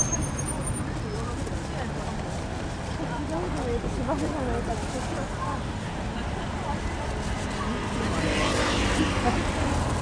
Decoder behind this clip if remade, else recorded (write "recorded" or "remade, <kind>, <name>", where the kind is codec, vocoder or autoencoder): recorded